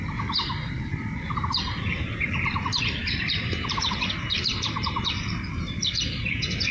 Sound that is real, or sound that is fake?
fake